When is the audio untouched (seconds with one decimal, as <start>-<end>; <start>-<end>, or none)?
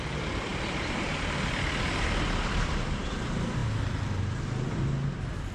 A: 3.6-5.1